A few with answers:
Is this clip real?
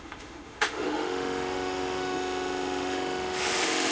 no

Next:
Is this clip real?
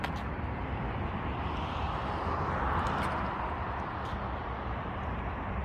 yes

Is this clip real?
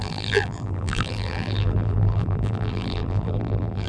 no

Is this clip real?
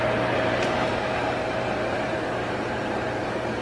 no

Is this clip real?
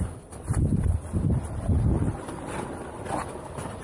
no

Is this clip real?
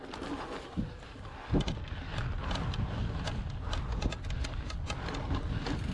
yes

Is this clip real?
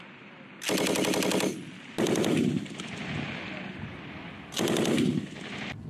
yes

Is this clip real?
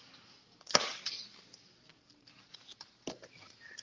yes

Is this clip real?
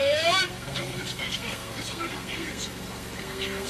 no